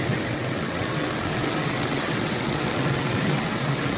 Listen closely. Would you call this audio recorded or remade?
remade